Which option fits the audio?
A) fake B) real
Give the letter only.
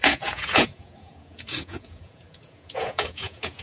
A